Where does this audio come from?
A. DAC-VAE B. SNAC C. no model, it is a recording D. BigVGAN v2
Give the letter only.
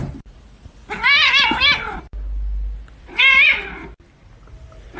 C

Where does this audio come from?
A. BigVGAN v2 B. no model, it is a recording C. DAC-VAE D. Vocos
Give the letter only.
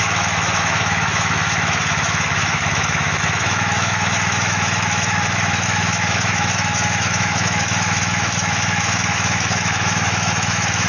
C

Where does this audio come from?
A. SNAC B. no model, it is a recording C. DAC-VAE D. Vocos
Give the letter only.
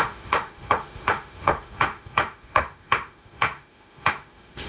C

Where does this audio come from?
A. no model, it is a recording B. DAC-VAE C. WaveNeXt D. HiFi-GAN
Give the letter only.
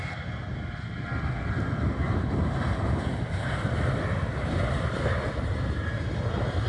A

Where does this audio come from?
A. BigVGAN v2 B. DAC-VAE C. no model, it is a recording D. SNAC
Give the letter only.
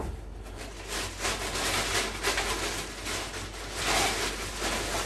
C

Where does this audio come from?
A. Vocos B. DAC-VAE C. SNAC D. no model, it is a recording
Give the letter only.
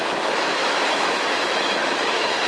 B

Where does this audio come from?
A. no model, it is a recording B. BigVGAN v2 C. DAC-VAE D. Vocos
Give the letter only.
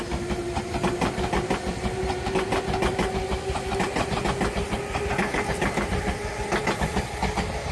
A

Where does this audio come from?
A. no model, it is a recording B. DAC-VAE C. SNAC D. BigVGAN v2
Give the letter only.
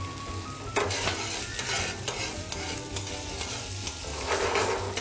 A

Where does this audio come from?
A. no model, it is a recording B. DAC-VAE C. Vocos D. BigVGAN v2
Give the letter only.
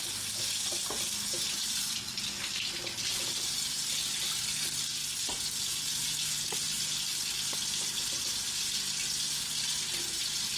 A